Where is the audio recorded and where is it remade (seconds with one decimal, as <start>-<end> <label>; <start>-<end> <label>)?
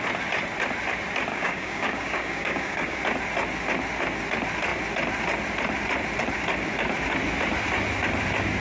0.0-1.3 recorded; 1.3-3.0 remade; 3.0-8.6 recorded